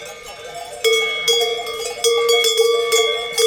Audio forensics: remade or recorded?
recorded